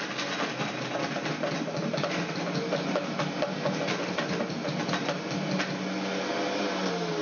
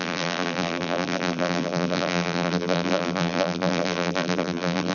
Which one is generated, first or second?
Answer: second